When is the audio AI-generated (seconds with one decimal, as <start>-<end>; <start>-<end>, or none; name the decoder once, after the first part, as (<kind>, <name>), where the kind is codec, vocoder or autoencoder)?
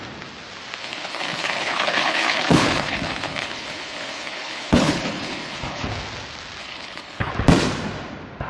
0.8-5.9 (codec, HILCodec); 6.6-7.3